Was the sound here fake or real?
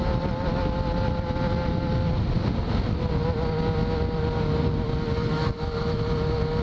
real